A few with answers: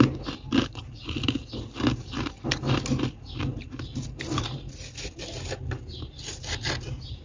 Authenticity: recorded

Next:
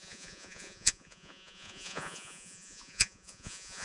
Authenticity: remade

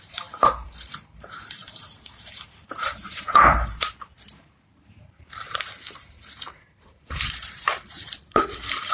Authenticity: remade